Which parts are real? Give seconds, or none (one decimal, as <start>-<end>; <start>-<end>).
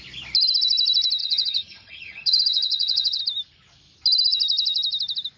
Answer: 0.0-1.2; 3.2-5.4